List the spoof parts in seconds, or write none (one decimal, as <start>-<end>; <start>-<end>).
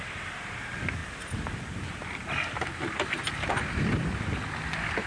none